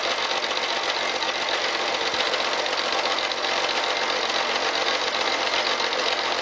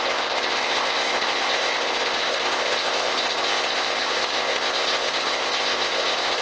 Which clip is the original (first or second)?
first